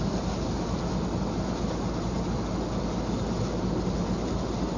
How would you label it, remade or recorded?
recorded